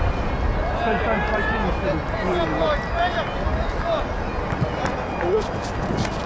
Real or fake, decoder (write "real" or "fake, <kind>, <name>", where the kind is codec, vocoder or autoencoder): real